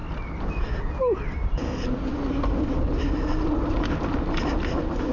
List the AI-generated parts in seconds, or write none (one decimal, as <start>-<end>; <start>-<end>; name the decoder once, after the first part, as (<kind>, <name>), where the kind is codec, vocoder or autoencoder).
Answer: none